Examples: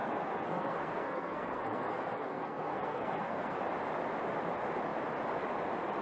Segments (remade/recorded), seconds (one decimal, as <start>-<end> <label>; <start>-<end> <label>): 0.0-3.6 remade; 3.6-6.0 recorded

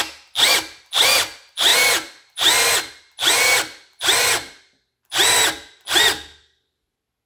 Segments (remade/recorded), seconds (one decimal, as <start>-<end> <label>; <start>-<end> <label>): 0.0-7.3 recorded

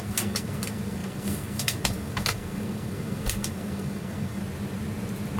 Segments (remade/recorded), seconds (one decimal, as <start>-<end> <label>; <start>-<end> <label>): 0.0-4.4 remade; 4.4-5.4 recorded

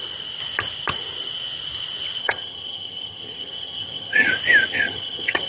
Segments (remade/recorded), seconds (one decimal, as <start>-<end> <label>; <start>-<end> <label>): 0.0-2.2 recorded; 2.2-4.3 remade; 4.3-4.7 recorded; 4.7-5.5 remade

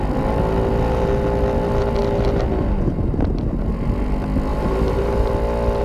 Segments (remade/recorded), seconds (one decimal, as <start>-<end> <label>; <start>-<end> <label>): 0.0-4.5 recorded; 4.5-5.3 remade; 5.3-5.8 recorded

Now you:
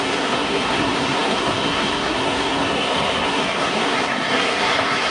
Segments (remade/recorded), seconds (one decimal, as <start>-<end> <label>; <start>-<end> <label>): 0.0-5.1 remade

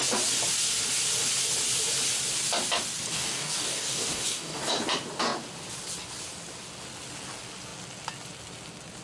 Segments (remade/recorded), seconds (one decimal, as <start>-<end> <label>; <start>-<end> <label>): 0.0-3.1 recorded; 3.1-4.7 remade; 4.7-9.0 recorded